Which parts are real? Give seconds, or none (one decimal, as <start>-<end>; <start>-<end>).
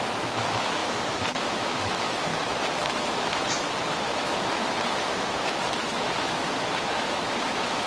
none